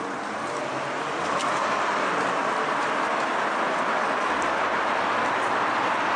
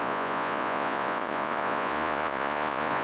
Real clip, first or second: first